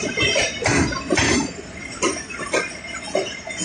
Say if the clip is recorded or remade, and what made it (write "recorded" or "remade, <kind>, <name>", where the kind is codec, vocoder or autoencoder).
recorded